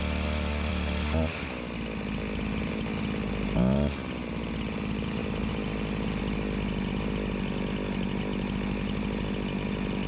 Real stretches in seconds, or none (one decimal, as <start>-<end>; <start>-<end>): 0.0-10.1